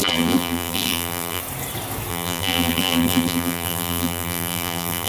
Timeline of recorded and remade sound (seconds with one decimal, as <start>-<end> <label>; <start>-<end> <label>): 0.0-1.4 remade; 1.4-2.1 recorded; 2.1-5.1 remade